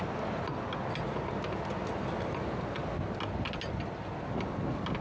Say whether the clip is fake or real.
real